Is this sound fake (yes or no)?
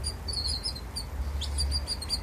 no